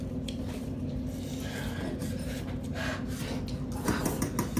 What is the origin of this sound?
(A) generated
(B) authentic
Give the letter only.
B